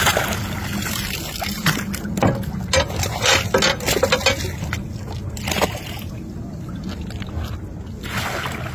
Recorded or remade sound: recorded